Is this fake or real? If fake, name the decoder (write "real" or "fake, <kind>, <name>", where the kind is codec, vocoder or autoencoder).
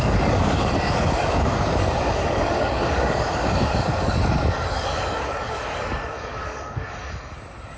fake, codec, DAC